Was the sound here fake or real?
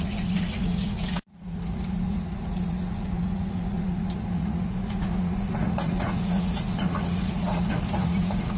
fake